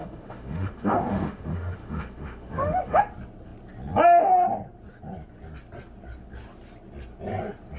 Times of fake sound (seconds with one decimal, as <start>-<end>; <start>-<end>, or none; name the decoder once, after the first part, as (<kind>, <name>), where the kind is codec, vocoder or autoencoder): 0.0-3.0 (autoencoder, DAC-VAE)